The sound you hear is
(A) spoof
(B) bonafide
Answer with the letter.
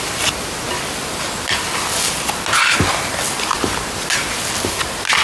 B